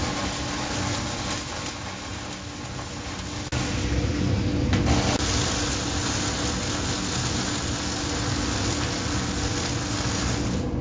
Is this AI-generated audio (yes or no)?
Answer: no